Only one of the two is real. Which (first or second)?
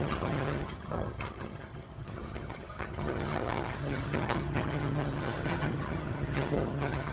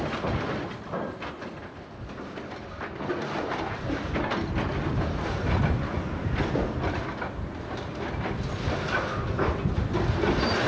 second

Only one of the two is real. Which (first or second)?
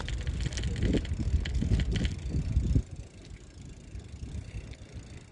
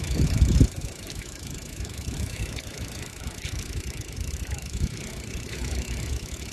first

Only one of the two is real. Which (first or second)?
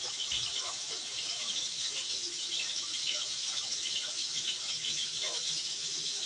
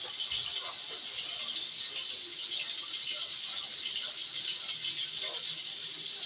second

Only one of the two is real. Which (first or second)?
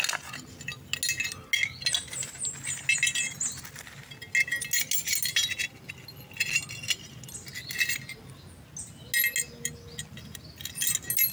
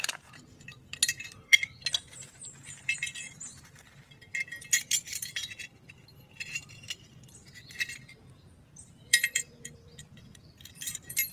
first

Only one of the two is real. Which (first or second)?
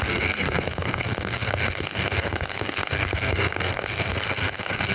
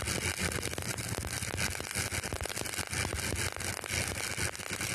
second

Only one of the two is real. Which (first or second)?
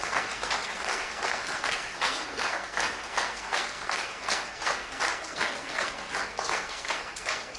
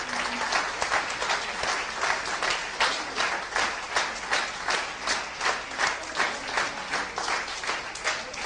second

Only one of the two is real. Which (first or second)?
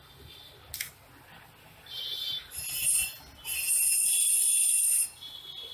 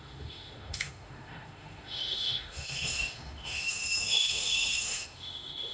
first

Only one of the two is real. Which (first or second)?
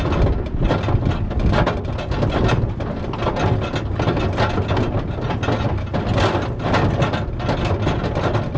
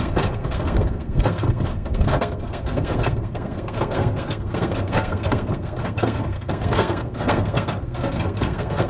first